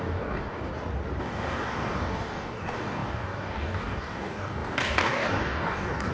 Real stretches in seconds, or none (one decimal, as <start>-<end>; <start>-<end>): 0.7-1.2